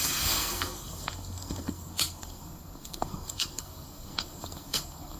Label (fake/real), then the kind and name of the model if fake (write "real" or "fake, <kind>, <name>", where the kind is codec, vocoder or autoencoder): fake, codec, SNAC